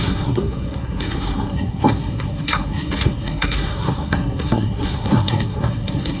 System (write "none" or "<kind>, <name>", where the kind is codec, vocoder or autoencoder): codec, SNAC